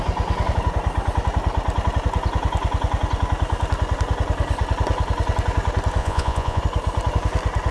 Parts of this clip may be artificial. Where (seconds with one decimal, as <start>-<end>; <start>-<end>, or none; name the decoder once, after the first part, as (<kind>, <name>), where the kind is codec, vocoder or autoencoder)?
6.0-6.6 (vocoder, Vocos)